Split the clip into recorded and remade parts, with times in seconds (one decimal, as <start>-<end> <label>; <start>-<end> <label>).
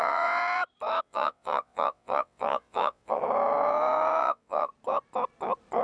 0.0-0.4 remade; 0.4-1.0 recorded; 1.0-3.2 remade; 3.2-4.2 recorded; 4.2-4.7 remade; 4.7-5.8 recorded